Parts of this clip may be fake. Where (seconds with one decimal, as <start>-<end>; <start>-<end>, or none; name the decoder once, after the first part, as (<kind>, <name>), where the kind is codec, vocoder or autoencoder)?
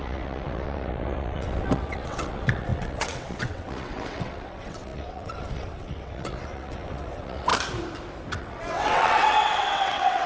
0.0-7.5 (vocoder, WaveNeXt); 8.4-10.3